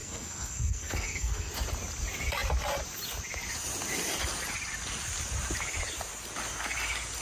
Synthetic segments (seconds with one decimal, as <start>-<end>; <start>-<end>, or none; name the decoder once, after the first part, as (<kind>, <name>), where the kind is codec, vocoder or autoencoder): 0.0-1.5 (codec, SNAC)